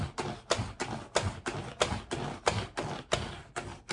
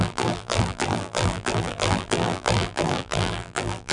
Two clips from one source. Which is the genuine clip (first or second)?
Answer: first